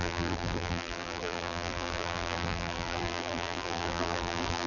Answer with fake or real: fake